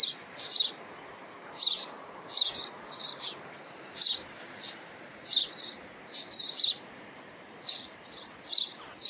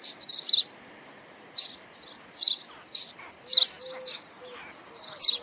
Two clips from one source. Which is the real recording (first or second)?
second